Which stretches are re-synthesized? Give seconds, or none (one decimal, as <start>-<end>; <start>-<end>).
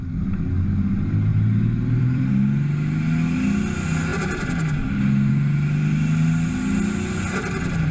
1.3-2.3